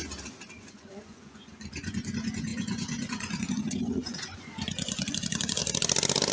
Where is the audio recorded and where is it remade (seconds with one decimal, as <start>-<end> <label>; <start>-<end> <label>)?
0.0-0.6 recorded; 0.6-5.6 remade; 5.6-6.3 recorded